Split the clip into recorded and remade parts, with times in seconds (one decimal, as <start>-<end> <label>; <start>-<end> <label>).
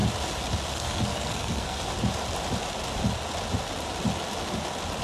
0.0-0.7 recorded; 0.7-1.9 remade; 1.9-5.0 recorded